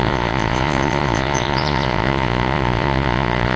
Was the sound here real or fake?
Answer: fake